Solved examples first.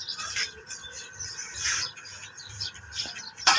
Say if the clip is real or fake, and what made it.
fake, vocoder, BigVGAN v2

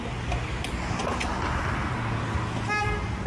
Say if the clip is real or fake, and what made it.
real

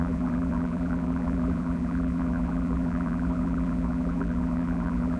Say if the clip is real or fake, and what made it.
fake, vocoder, BigVGAN v2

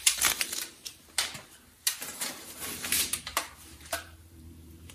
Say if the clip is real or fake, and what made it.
fake, vocoder, BigVGAN v2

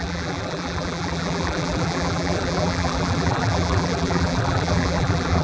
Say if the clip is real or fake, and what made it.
fake, vocoder, BigVGAN v2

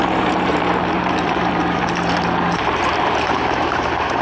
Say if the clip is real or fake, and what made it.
fake, vocoder, BigVGAN v2